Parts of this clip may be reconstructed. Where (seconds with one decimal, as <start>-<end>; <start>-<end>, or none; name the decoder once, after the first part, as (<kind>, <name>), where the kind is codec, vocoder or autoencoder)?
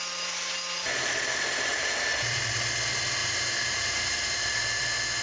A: 1.7-2.4 (vocoder, BigVGAN v2); 3.2-4.8